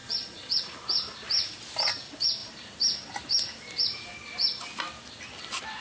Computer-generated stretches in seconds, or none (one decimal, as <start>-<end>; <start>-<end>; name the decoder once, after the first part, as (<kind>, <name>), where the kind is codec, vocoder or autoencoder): 0.0-0.6 (vocoder, Vocos)